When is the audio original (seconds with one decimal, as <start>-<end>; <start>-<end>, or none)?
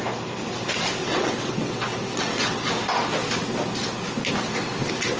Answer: 0.0-1.0; 2.6-5.2